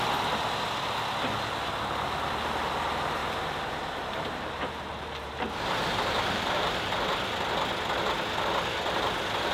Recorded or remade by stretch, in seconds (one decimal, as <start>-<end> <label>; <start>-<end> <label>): 0.0-3.2 recorded; 3.2-6.9 remade; 6.9-9.5 recorded